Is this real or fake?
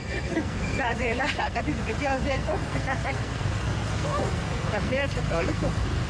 fake